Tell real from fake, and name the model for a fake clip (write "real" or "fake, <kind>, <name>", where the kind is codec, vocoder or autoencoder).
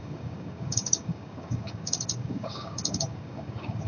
fake, codec, DAC